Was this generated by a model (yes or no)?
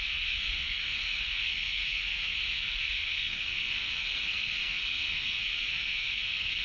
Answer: yes